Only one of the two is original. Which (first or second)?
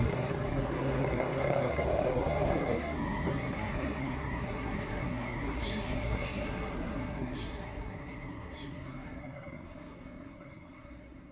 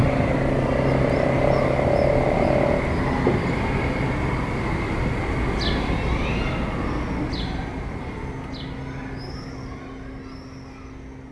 second